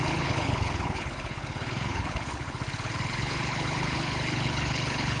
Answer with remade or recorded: remade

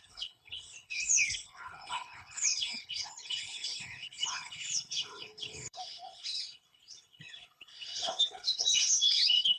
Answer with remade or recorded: remade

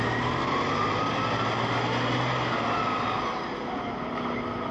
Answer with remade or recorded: recorded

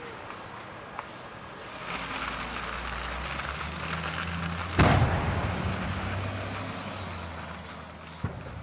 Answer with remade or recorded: recorded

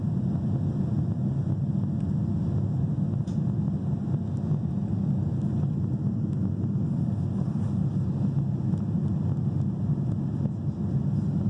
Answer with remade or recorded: recorded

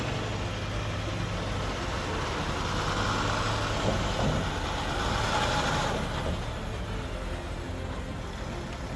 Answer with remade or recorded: recorded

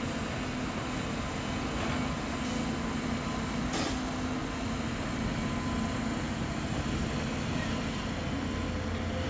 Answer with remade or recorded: recorded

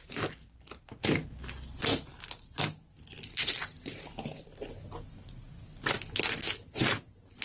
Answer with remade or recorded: recorded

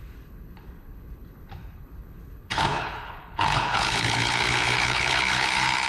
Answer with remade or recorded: remade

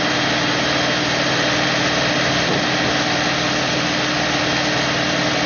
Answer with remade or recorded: recorded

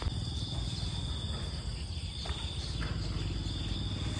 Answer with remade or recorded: recorded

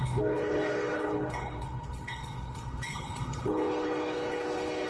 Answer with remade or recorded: remade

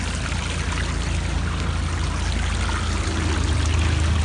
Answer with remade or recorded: recorded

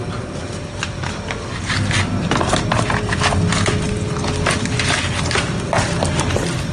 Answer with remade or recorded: recorded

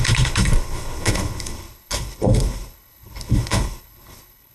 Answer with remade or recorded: remade